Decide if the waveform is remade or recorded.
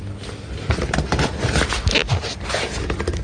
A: recorded